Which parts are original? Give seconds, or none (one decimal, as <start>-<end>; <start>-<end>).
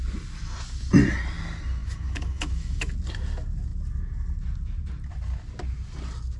0.0-1.8; 2.9-6.4